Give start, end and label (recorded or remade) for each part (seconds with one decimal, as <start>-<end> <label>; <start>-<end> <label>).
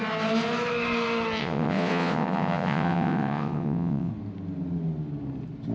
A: 0.0-1.4 recorded; 1.4-4.1 remade; 4.1-5.7 recorded